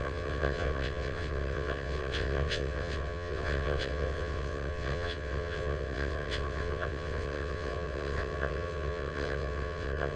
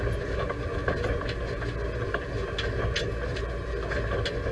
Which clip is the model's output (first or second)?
first